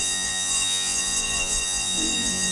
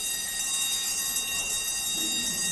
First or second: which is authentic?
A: second